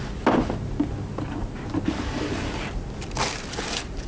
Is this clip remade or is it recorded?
recorded